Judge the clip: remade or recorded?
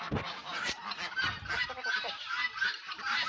remade